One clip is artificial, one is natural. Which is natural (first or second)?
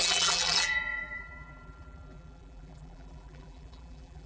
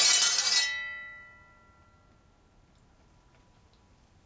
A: second